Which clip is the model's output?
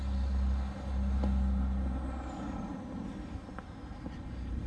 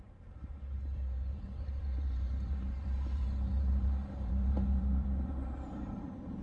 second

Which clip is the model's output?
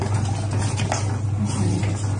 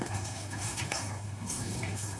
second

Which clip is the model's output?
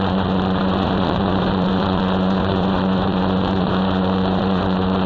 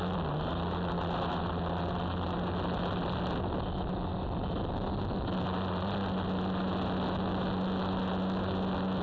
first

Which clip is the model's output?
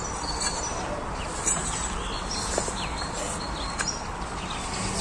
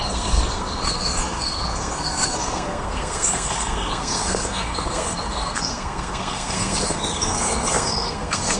second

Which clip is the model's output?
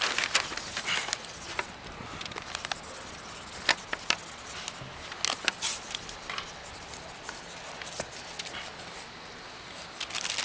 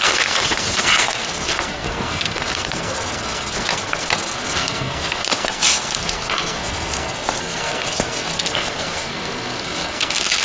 second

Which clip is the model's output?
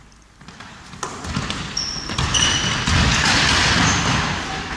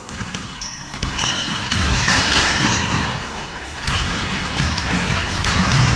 second